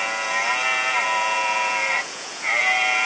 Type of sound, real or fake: fake